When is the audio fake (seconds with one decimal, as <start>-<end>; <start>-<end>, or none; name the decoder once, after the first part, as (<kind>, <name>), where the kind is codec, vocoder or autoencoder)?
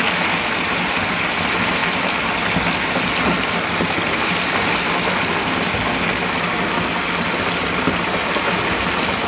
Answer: 1.8-2.3 (vocoder, BigVGAN v2)